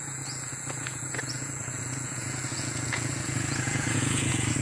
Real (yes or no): no